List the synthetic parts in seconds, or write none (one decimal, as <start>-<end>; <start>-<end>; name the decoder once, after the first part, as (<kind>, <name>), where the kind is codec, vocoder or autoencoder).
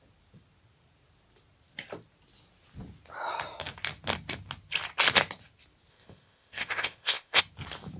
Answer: 5.9-7.4 (codec, ZipCodec)